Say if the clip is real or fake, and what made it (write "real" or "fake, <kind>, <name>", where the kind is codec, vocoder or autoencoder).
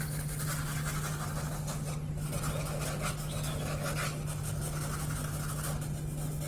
real